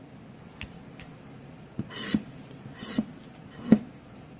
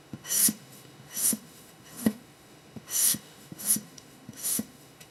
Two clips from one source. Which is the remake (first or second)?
second